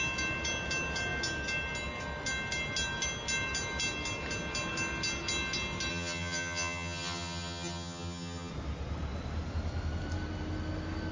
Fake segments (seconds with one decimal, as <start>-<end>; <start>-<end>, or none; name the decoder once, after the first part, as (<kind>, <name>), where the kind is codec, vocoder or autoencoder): 5.9-8.5 (vocoder, HiFi-GAN)